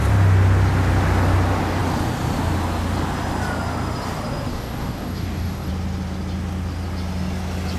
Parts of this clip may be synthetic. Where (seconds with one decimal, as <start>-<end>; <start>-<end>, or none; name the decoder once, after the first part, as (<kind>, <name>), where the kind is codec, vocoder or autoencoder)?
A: 4.5-5.7 (codec, DAC)

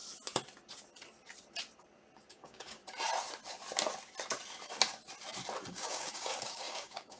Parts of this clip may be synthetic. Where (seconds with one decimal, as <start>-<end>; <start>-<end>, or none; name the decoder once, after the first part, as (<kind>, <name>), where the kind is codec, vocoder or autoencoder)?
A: 2.3-2.8 (codec, DAC); 5.7-7.2

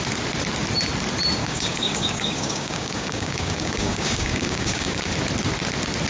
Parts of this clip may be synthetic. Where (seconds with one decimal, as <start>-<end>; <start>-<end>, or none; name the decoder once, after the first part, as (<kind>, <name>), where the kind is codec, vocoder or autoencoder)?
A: 1.4-5.1 (codec, DAC)

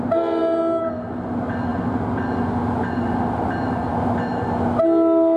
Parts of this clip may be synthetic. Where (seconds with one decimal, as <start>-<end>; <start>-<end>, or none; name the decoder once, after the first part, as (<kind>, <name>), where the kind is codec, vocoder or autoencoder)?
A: none

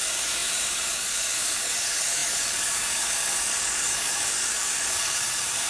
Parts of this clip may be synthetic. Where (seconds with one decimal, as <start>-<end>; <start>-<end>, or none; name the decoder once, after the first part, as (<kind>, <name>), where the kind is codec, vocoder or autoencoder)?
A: 0.0-5.7 (codec, DAC)